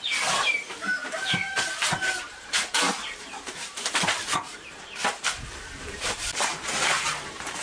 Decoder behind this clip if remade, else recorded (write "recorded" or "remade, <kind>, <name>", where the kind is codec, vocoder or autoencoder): remade, vocoder, BigVGAN v2